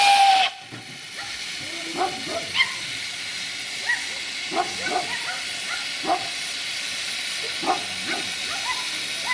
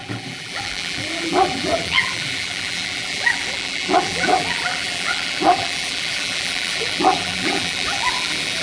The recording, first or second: first